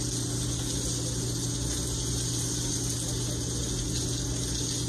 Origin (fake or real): real